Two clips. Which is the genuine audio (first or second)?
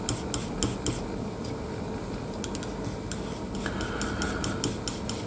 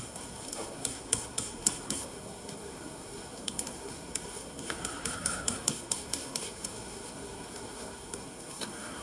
first